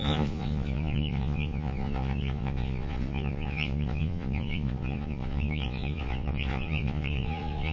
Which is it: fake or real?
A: fake